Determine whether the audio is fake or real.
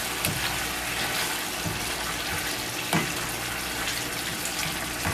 real